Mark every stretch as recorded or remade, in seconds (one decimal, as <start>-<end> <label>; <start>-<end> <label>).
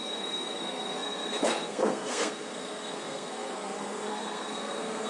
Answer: 0.0-5.1 remade